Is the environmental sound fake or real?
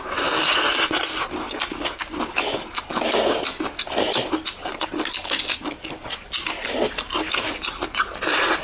real